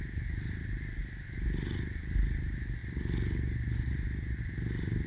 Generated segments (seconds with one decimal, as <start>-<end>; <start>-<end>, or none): 0.0-2.8; 4.4-5.1

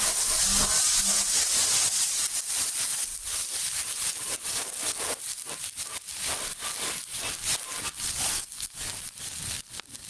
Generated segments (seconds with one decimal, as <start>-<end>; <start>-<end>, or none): 8.3-8.9